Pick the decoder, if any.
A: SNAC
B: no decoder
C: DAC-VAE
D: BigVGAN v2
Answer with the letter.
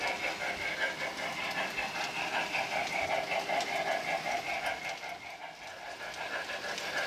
B